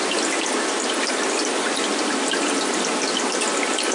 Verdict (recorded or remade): recorded